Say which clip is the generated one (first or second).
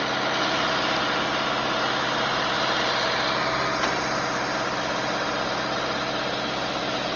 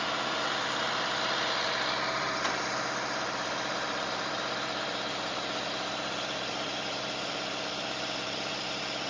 second